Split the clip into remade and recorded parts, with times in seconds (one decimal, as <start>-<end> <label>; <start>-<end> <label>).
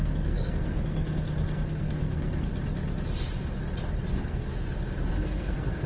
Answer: 0.0-2.5 remade; 2.5-4.1 recorded; 4.1-4.5 remade; 4.5-5.2 recorded; 5.2-5.9 remade